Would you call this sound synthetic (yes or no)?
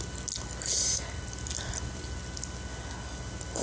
no